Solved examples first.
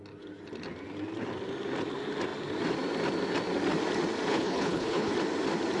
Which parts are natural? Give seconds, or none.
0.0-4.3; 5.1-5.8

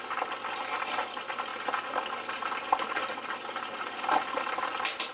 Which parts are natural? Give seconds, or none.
1.5-4.6

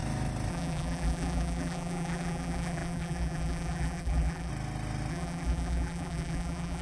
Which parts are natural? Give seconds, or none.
0.0-0.5; 4.5-5.1

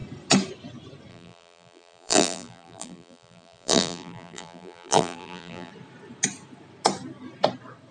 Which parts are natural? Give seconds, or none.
0.0-1.1; 5.7-7.9

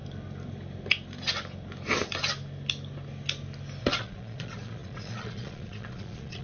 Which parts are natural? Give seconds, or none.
0.0-3.8

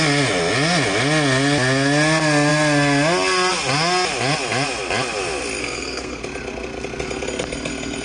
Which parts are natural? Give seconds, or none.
0.0-5.6; 6.2-8.0

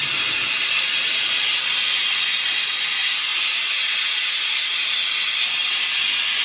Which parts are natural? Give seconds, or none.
0.0-0.4; 1.4-3.3; 3.9-6.4

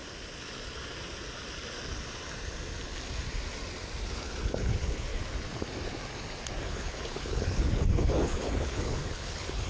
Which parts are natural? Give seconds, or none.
0.0-4.1; 5.1-6.6